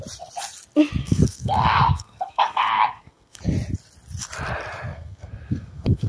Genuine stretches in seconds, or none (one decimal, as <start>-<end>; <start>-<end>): 0.0-1.0; 3.4-4.9